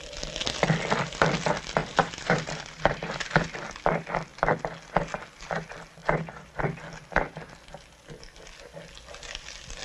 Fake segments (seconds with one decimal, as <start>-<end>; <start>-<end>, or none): 1.8-3.1; 6.0-6.6